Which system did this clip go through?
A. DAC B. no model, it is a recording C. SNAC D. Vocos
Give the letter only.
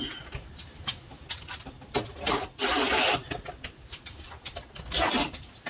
B